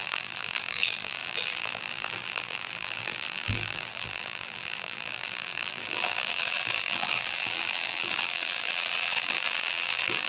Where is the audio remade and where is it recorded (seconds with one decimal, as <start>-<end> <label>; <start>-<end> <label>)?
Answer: 0.0-10.3 remade